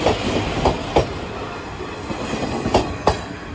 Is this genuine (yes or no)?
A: yes